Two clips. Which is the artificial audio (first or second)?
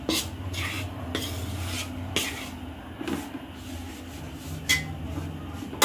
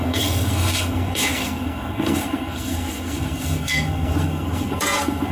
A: second